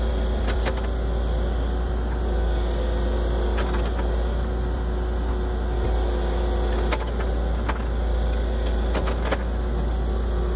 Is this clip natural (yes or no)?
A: yes